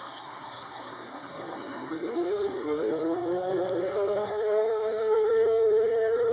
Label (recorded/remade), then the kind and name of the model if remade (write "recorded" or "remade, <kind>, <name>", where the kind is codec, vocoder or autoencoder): remade, codec, SNAC